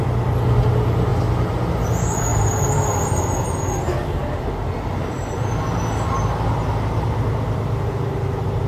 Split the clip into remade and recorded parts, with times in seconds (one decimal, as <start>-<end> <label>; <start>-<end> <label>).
0.0-8.7 recorded